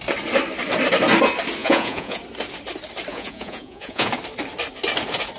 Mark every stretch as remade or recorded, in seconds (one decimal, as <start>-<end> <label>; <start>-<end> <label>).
0.0-1.6 recorded; 1.6-2.2 remade; 2.2-3.1 recorded; 3.1-4.1 remade; 4.1-5.4 recorded